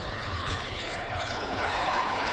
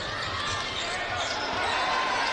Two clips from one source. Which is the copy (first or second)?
first